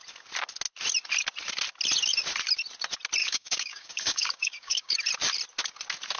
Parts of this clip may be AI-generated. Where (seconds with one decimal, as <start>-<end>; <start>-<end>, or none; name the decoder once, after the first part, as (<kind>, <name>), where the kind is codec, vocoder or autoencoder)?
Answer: 3.2-4.9 (codec, DAC)